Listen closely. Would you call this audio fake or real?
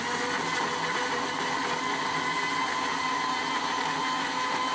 real